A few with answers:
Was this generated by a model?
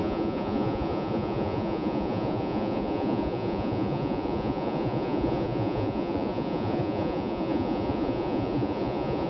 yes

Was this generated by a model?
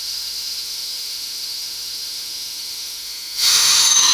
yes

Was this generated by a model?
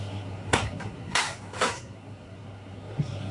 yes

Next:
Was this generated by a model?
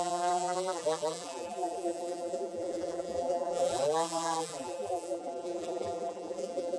yes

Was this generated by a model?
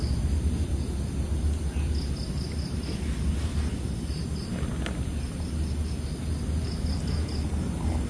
no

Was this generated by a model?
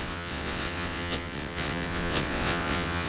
yes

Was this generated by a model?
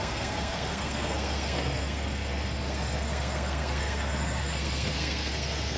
yes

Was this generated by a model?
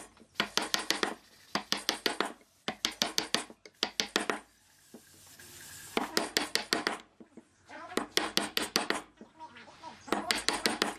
no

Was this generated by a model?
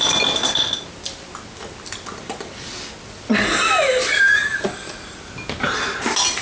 no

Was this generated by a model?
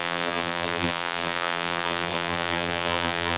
yes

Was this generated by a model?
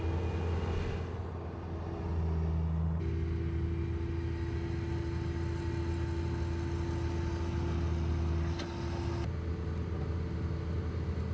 no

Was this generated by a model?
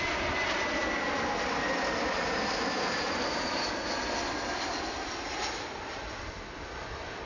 no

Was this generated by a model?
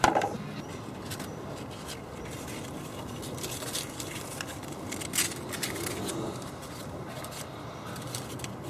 no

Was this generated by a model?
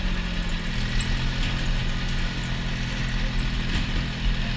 no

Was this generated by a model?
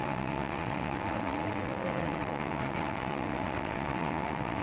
yes